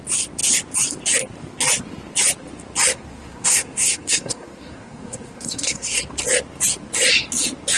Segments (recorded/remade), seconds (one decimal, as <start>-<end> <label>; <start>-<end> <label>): 0.0-2.9 recorded; 2.9-6.0 remade; 6.0-7.8 recorded